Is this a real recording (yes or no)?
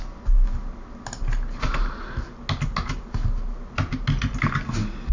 yes